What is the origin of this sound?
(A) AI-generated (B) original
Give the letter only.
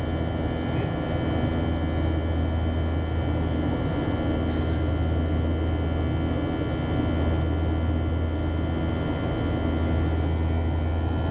B